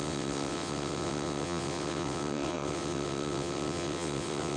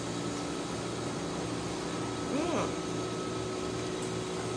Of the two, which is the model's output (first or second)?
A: first